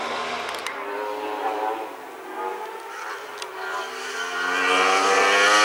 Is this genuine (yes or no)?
yes